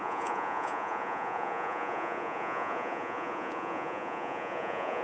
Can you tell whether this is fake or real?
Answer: fake